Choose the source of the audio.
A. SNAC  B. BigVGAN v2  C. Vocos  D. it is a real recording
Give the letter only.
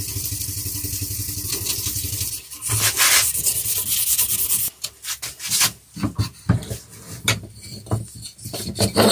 D